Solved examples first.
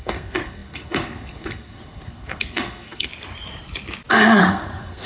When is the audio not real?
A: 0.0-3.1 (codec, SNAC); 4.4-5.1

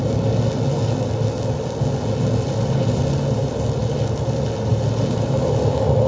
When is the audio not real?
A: none

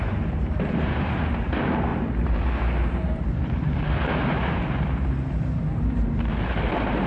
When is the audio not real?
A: 0.0-7.1 (vocoder, BigVGAN v2)

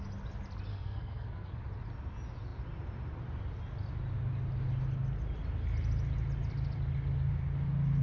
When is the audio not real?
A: 0.7-1.5 (codec, SNAC)

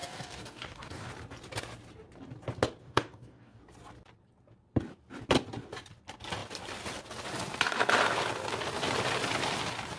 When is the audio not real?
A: 0.0-1.1 (codec, DAC); 2.8-3.6

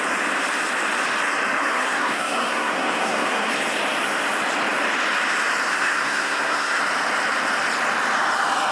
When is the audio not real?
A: 1.6-3.5 (codec, SNAC); 5.7-6.8

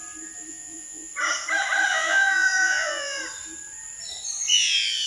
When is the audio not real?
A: 0.5-1.1 (vocoder, Vocos); 1.9-3.2; 4.5-5.1